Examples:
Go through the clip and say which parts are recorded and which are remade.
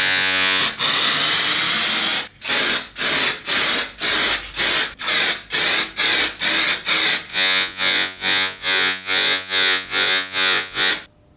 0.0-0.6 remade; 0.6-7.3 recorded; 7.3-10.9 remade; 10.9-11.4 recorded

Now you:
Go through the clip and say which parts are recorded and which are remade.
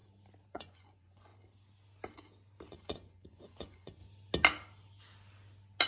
0.0-0.5 recorded; 0.5-1.3 remade; 1.3-2.7 recorded; 2.7-4.0 remade; 4.0-5.9 recorded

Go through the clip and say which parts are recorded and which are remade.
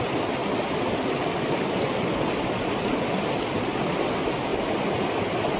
0.0-5.6 recorded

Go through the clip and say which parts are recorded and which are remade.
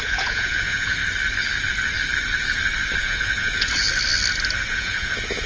0.0-1.0 remade; 1.0-3.0 recorded; 3.0-3.7 remade; 3.7-4.7 recorded; 4.7-5.5 remade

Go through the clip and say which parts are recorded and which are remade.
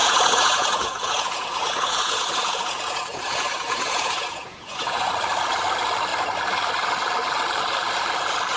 0.0-5.1 remade; 5.1-8.6 recorded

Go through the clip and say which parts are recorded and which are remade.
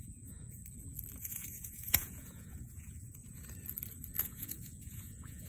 0.0-0.6 remade; 0.6-1.2 recorded; 1.2-3.2 remade; 3.2-4.2 recorded; 4.2-5.5 remade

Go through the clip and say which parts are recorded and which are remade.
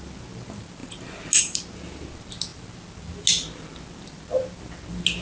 0.0-5.2 recorded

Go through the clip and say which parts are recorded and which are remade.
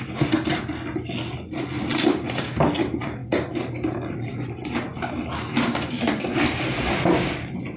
0.0-7.8 recorded